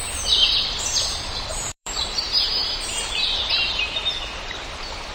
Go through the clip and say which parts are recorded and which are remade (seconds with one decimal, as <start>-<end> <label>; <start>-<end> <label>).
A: 0.0-1.5 recorded; 1.5-3.5 remade; 3.5-5.1 recorded